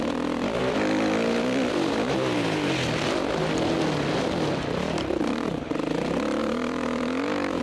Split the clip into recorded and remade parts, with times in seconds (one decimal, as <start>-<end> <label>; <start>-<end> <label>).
0.0-6.4 recorded; 6.4-7.6 remade

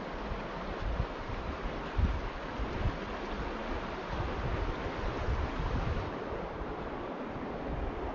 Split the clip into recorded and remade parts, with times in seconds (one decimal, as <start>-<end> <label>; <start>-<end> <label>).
0.0-8.1 recorded